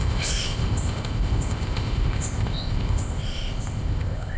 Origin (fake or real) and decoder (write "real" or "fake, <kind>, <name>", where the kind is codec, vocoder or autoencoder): fake, codec, ZipCodec